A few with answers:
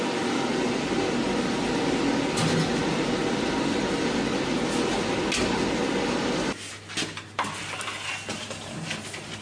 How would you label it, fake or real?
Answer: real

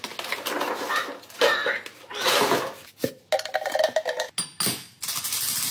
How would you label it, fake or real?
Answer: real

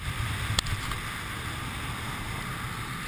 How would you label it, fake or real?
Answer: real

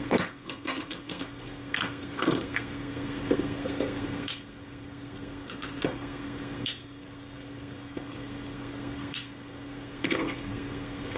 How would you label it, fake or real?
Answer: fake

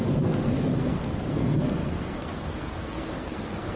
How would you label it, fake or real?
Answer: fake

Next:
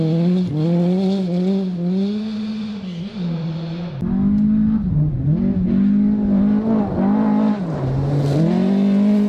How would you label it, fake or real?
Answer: real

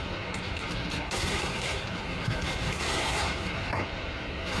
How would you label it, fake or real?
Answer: fake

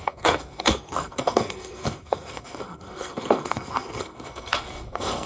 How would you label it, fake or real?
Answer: fake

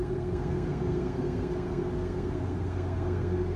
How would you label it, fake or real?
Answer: fake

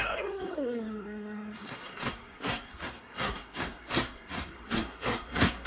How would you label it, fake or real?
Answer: fake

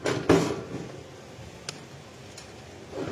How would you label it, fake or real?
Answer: real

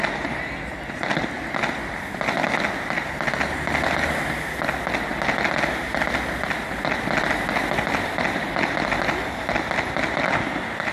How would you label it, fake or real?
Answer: real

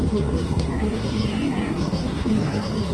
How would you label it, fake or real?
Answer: fake